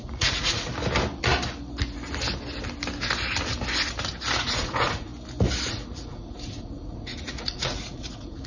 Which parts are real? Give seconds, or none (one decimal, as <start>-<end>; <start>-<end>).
0.7-4.4; 5.1-5.7